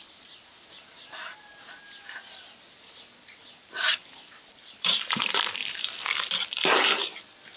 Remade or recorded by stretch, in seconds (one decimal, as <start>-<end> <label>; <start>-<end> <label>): 0.0-4.0 recorded; 4.0-5.0 remade; 5.0-5.6 recorded; 5.6-6.3 remade; 6.3-7.6 recorded